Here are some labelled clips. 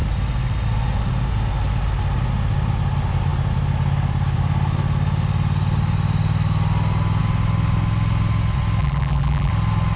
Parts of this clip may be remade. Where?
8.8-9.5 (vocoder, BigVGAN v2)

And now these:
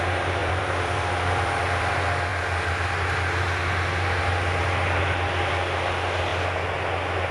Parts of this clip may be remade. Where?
0.4-1.9 (vocoder, BigVGAN v2)